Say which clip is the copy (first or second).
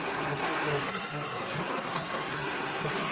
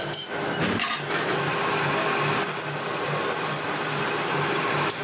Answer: first